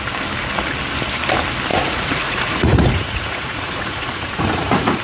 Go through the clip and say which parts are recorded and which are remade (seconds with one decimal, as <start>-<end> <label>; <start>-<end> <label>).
0.0-1.7 recorded; 1.7-5.0 remade

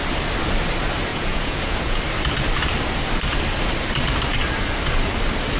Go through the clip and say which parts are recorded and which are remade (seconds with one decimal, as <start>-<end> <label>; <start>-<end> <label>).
0.0-1.1 recorded; 1.1-2.0 remade; 2.0-5.6 recorded